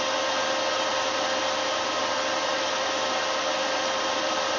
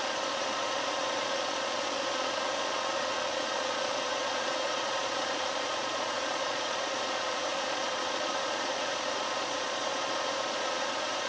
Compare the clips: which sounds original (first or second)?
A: first